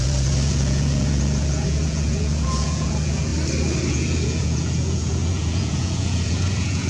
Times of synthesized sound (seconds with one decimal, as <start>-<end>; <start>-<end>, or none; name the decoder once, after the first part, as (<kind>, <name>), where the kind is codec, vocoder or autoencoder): 0.0-3.3 (vocoder, Vocos); 3.9-6.9